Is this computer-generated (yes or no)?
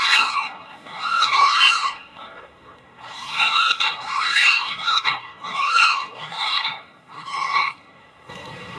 yes